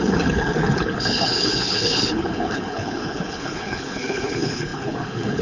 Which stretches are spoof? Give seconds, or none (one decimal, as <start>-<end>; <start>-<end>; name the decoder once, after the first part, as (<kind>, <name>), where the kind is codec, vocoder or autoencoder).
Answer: 0.0-5.4 (codec, HILCodec)